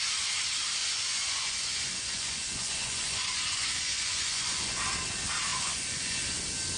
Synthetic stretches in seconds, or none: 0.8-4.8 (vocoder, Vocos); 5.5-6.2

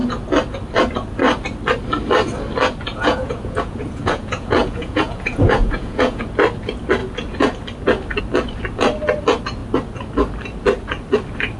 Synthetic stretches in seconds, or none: 2.9-6.2 (vocoder, Vocos)